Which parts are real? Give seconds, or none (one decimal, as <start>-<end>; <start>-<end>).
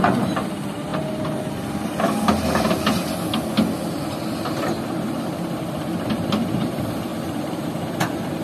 0.0-8.4